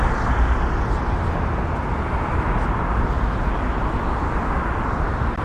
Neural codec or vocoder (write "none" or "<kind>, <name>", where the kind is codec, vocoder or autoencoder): none